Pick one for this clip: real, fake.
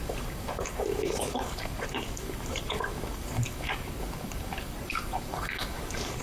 fake